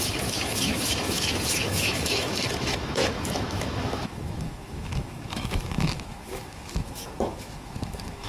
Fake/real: fake